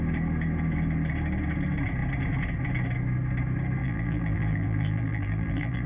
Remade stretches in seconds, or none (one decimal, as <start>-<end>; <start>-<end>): 3.8-5.9